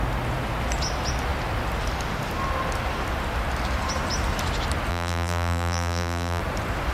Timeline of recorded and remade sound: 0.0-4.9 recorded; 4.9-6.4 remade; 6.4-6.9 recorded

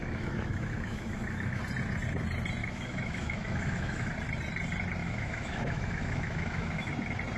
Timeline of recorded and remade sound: 0.0-1.6 remade; 1.6-2.6 recorded; 2.6-4.1 remade; 4.1-5.0 recorded; 5.0-6.9 remade; 6.9-7.4 recorded

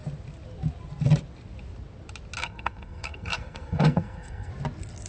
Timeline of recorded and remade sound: 0.0-2.4 recorded; 2.4-4.5 remade; 4.5-5.1 recorded

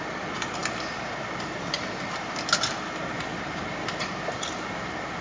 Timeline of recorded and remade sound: 0.0-5.2 recorded

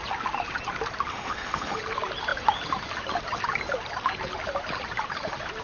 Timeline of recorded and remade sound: 0.0-1.1 recorded; 1.1-1.8 remade; 1.8-5.6 recorded

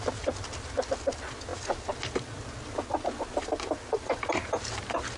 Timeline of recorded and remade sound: 0.0-5.2 recorded

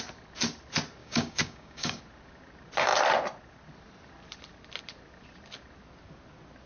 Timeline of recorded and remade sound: 0.0-1.0 recorded; 1.0-2.0 remade; 2.0-6.7 recorded

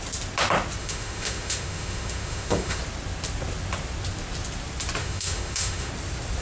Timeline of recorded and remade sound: 0.0-0.8 recorded; 0.8-2.8 remade; 2.8-5.0 recorded; 5.0-5.9 remade; 5.9-6.4 recorded